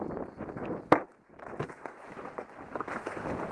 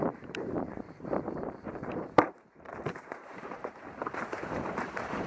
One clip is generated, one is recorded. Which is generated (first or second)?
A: second